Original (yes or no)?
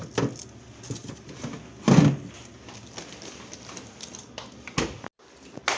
yes